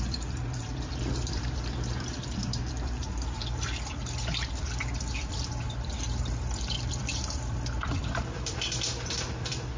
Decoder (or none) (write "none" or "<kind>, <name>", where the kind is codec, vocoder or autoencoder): vocoder, BigVGAN v2